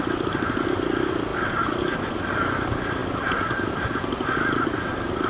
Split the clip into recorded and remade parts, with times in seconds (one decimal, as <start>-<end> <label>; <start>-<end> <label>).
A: 0.0-5.3 recorded